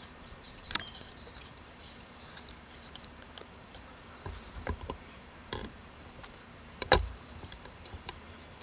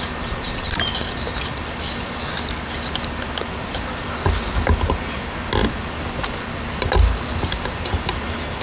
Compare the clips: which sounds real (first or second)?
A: second